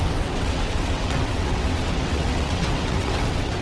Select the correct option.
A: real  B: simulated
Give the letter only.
B